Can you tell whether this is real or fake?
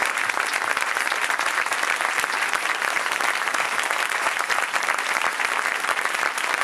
fake